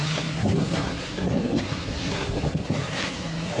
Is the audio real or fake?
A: fake